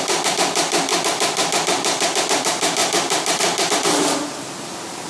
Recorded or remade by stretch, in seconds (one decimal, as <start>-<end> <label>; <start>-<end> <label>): 0.0-0.9 remade; 0.9-2.4 recorded; 2.4-5.1 remade